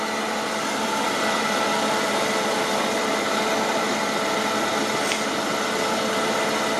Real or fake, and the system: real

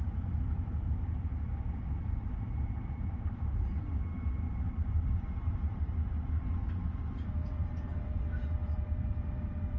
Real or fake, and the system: fake, vocoder, BigVGAN v2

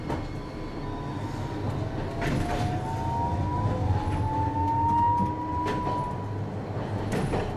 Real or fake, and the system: real